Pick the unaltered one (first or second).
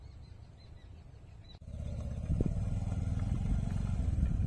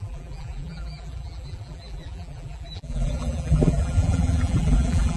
first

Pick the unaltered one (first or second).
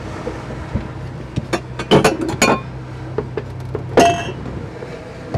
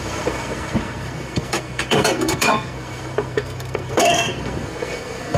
first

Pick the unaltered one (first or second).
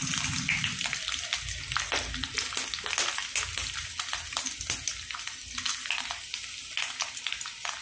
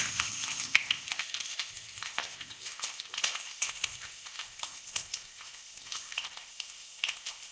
first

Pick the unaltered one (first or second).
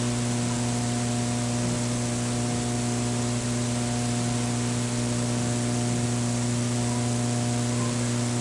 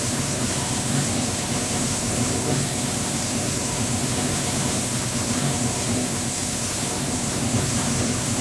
first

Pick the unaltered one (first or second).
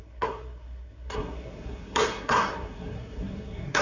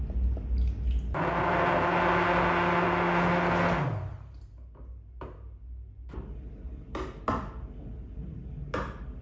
second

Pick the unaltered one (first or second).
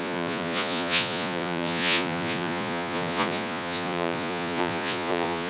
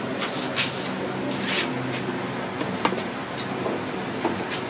second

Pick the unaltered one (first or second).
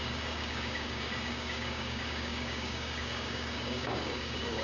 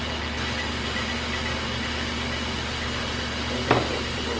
second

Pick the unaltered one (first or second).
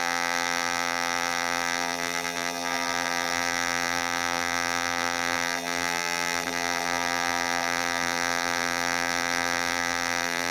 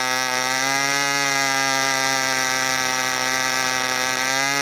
second